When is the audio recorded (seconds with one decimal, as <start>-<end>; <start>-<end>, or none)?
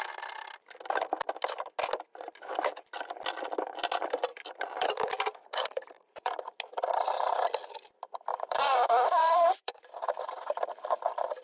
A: 0.0-4.3; 6.3-8.3; 10.4-11.4